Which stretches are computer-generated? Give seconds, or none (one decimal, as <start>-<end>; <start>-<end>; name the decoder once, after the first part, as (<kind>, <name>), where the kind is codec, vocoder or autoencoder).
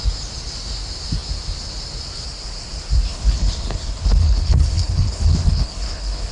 3.1-6.3 (codec, HILCodec)